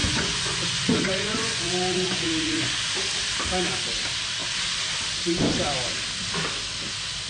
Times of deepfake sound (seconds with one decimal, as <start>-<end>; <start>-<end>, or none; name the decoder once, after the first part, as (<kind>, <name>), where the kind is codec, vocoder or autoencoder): 0.0-2.9 (vocoder, Vocos)